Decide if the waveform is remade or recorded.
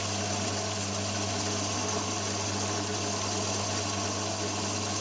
recorded